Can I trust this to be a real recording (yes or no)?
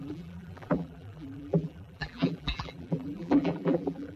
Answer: no